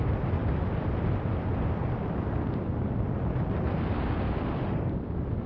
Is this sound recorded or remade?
recorded